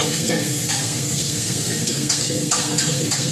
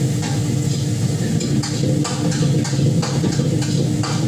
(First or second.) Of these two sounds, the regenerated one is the first